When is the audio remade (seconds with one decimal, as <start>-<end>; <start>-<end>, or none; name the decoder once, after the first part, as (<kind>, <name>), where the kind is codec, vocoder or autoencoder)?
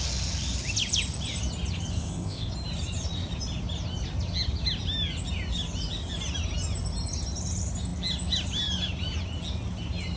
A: 1.9-2.5 (codec, ZipCodec)